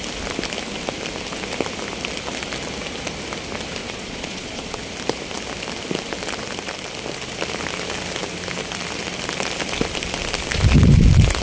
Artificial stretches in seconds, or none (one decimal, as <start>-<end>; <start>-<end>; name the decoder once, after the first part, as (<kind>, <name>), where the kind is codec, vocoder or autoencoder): 3.8-4.8 (vocoder, Vocos)